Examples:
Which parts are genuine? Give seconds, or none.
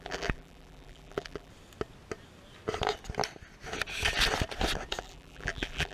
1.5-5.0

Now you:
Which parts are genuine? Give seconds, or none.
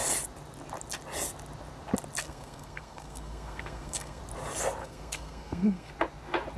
0.0-2.2; 4.2-4.8; 5.9-6.6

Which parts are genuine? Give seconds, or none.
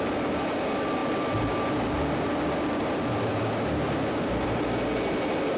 0.0-1.0; 3.4-5.6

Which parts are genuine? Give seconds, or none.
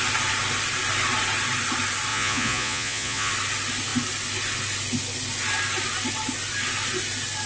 0.0-2.1; 3.3-7.5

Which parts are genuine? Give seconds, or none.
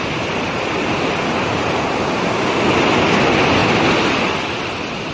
0.0-5.1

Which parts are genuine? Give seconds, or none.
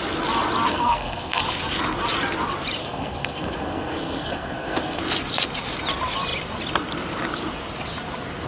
0.0-0.7; 1.4-2.8; 5.0-8.5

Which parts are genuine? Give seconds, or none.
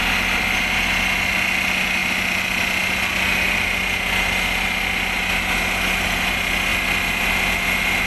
0.0-8.1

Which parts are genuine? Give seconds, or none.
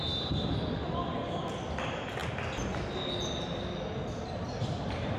0.0-5.2